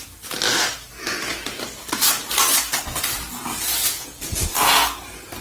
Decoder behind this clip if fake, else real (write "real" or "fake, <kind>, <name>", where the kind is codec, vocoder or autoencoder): real